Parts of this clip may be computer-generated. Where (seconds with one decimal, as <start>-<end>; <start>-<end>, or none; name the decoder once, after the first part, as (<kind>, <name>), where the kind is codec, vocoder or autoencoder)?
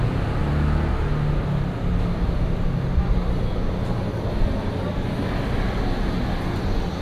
none